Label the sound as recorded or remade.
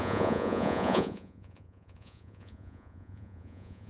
remade